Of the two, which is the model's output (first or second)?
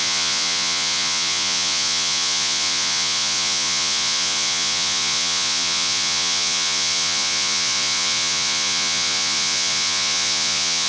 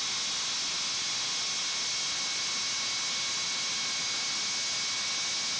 first